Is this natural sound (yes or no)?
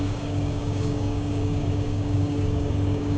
no